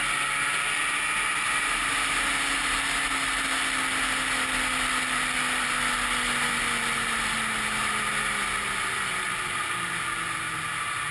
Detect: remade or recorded recorded